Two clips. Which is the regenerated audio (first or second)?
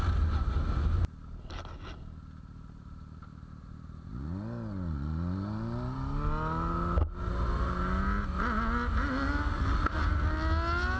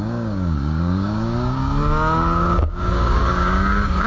second